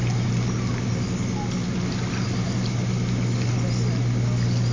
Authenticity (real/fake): real